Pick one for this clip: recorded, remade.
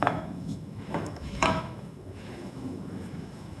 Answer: remade